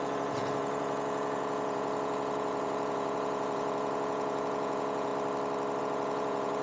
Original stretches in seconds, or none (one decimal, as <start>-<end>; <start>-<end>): 5.1-5.8